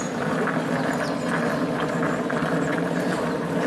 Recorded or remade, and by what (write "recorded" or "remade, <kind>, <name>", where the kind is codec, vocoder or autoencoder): recorded